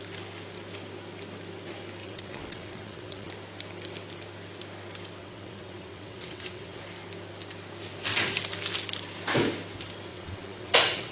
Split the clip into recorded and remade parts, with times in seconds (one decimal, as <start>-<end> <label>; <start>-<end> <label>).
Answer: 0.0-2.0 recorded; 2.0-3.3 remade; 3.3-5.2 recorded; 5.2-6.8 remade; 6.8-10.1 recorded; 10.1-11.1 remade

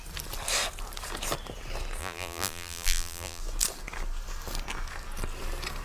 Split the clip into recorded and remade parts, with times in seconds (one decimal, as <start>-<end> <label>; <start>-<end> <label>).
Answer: 0.0-2.0 recorded; 2.0-3.4 remade; 3.4-5.8 recorded

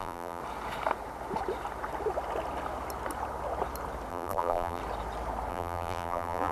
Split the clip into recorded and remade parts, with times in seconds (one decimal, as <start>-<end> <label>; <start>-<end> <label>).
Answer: 0.0-0.4 remade; 0.4-4.1 recorded; 4.1-4.8 remade; 4.8-5.5 recorded; 5.5-6.5 remade